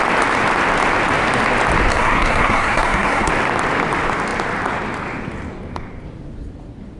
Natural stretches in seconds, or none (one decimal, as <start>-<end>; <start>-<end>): 0.0-1.9; 3.3-7.0